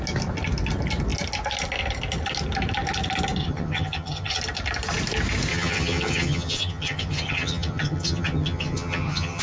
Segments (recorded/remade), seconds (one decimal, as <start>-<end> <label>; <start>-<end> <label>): 0.0-3.4 recorded; 3.4-4.4 remade; 4.4-5.5 recorded; 5.5-9.4 remade